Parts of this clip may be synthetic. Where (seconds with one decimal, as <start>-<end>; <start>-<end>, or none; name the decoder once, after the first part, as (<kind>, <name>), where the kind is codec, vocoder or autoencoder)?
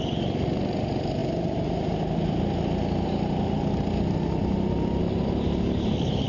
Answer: none